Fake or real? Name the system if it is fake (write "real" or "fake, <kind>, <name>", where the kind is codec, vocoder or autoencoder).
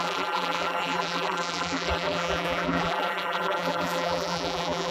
fake, vocoder, BigVGAN v2